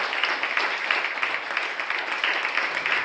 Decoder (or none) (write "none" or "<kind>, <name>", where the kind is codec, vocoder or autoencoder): none